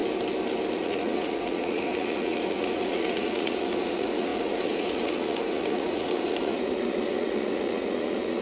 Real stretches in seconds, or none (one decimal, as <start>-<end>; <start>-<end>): 0.0-0.7